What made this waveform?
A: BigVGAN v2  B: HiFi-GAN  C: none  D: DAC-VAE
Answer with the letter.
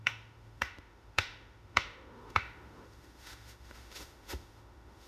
D